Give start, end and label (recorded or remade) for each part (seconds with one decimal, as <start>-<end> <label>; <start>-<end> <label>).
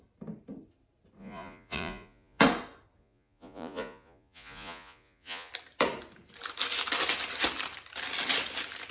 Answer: 0.0-1.2 recorded; 1.2-2.4 remade; 2.4-3.0 recorded; 3.0-5.5 remade; 5.5-8.9 recorded